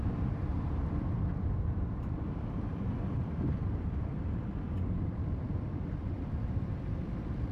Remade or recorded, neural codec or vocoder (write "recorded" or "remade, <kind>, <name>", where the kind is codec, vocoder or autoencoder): remade, vocoder, BigVGAN v2